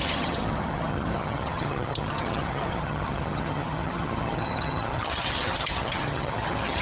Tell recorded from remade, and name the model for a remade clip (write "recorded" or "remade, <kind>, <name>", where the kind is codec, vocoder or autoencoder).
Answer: remade, vocoder, HiFi-GAN